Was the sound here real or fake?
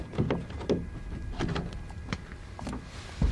real